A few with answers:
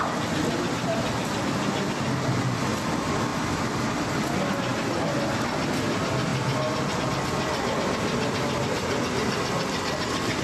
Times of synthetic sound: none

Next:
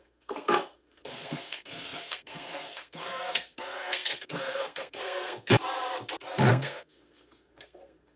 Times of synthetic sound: 0.0-5.5 (codec, SNAC); 6.5-8.2

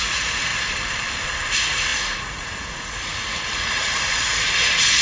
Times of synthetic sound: 0.0-0.5 (vocoder, Vocos); 1.5-5.0

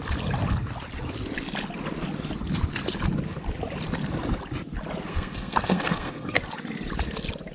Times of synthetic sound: 5.1-6.4 (codec, SNAC)

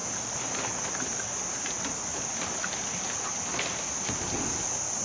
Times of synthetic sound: none